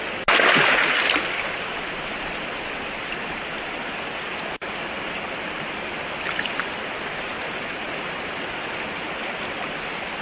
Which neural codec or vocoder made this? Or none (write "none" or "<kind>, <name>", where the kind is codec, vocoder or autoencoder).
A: none